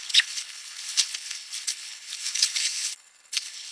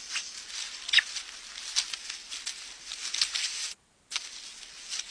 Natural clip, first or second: second